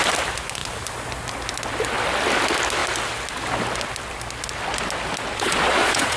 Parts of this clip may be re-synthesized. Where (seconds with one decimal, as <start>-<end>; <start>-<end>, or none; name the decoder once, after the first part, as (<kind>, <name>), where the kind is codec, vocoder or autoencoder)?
5.3-6.2 (vocoder, Vocos)